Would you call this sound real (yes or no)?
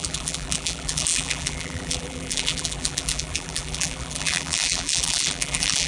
no